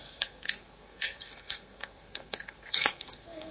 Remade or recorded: remade